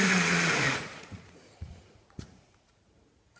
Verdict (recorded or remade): remade